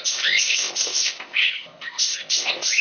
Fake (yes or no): yes